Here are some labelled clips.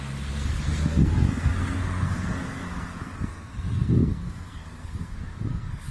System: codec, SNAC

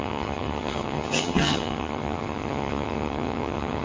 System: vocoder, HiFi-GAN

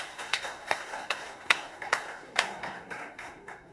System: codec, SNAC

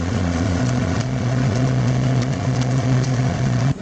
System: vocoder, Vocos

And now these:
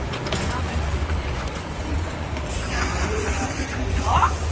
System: vocoder, Vocos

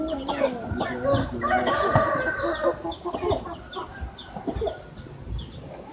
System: none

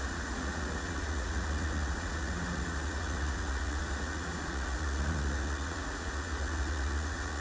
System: vocoder, Vocos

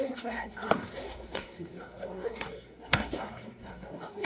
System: codec, SNAC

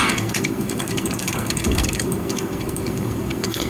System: codec, SNAC